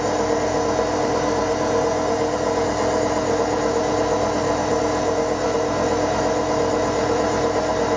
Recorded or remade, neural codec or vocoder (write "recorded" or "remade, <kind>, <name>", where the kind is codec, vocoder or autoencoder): recorded